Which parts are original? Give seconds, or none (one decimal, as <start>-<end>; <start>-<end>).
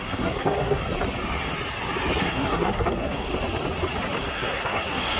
0.8-2.2; 3.3-4.2